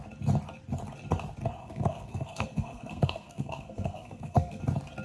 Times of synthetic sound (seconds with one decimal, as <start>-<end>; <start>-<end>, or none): 1.6-4.6